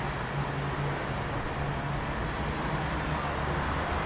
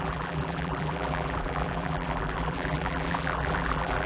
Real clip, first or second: first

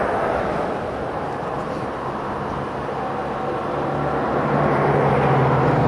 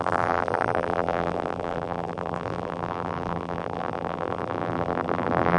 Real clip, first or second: first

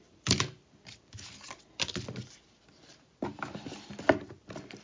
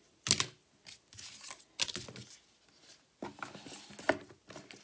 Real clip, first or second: second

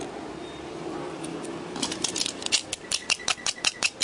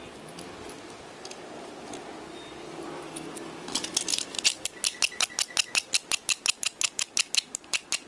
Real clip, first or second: second